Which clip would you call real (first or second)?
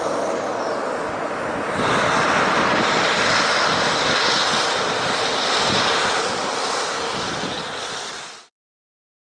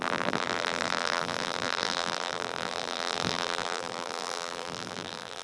first